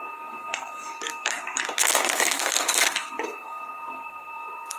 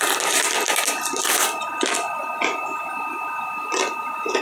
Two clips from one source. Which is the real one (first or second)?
second